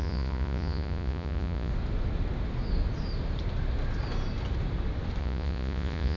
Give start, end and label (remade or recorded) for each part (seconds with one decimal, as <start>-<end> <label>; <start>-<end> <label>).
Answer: 0.0-1.7 remade; 1.7-5.2 recorded; 5.2-6.2 remade

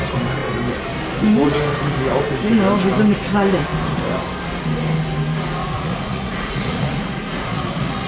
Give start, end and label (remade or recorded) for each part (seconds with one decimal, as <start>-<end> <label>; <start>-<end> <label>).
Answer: 0.0-5.6 recorded; 5.6-8.1 remade

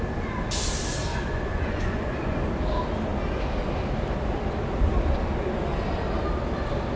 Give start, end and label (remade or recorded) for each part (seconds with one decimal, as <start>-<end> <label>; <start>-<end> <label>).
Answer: 0.0-1.1 recorded; 1.1-2.4 remade; 2.4-7.0 recorded

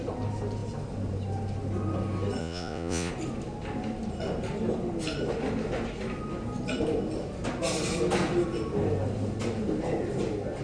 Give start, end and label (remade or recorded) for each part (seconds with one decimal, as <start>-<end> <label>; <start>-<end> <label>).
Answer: 0.0-2.4 recorded; 2.4-3.1 remade; 3.1-10.6 recorded

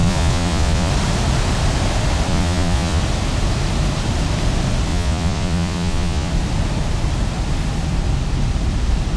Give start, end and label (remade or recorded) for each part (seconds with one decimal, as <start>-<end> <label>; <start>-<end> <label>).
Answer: 0.0-0.9 remade; 0.9-2.3 recorded; 2.3-3.0 remade; 3.0-4.9 recorded; 4.9-6.3 remade; 6.3-9.2 recorded

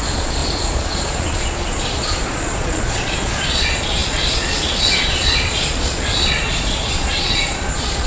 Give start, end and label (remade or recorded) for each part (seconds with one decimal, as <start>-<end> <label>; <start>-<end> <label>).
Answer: 0.0-8.1 remade

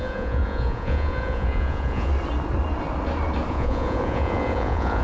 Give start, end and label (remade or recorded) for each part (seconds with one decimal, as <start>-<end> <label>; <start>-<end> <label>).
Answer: 0.0-2.1 remade; 2.1-3.5 recorded; 3.5-5.0 remade